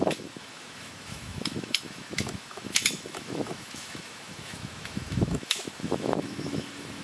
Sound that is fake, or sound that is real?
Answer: fake